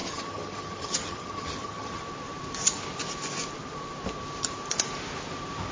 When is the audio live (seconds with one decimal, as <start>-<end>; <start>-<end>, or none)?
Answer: 2.0-5.7